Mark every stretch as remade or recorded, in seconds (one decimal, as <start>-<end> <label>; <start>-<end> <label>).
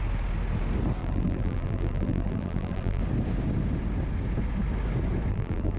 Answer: 0.0-1.0 recorded; 1.0-3.0 remade; 3.0-5.3 recorded; 5.3-5.8 remade